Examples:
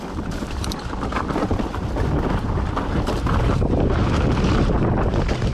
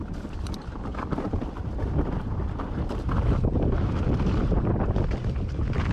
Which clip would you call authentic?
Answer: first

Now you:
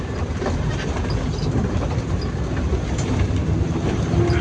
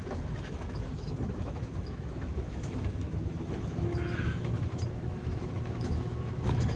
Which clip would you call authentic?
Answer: first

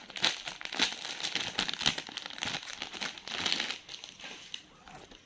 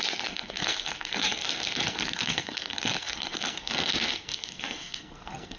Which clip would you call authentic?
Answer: first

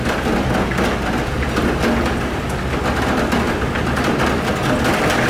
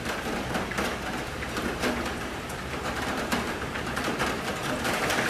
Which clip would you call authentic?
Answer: first